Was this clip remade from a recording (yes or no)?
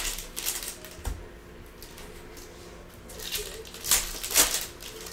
no